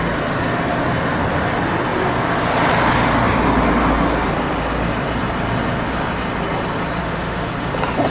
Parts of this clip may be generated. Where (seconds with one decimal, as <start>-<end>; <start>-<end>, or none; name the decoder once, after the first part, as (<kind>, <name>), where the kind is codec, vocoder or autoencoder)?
7.0-7.5 (autoencoder, DAC-VAE)